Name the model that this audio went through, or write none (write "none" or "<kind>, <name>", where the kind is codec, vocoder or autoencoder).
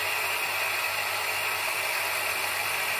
none